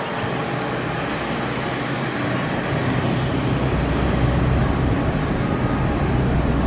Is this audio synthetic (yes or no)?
no